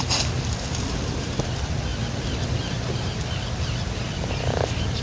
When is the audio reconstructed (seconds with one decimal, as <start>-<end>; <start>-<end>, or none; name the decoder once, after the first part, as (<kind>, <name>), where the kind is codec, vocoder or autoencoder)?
none